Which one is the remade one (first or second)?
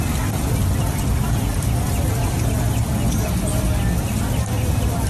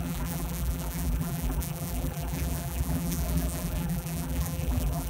second